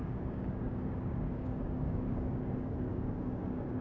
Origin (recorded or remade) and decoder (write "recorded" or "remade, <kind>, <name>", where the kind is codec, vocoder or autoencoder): remade, codec, DAC